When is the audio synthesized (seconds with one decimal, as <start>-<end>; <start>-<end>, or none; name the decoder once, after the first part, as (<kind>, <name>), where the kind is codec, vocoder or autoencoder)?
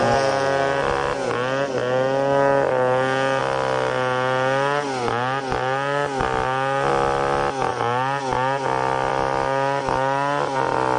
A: none